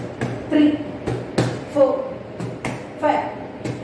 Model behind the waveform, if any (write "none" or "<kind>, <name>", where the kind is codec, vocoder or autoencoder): none